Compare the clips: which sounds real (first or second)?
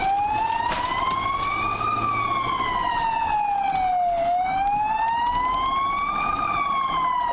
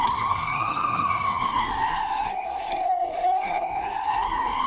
first